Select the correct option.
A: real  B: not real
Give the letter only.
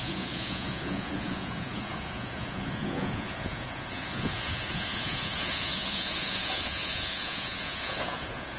B